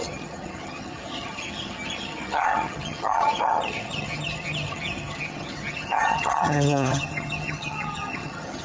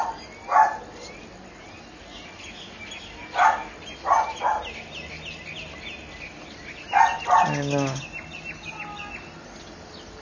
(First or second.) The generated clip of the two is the first